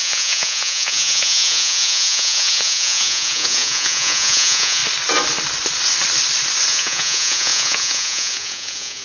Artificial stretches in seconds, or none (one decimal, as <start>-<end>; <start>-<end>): 0.0-4.8; 6.7-9.0